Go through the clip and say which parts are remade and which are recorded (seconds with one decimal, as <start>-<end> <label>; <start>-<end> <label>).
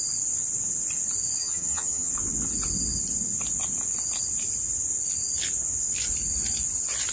0.0-1.4 recorded; 1.4-2.1 remade; 2.1-7.1 recorded